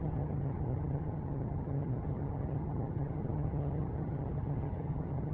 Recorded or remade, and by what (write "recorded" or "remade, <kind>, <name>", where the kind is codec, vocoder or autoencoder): remade, vocoder, HiFi-GAN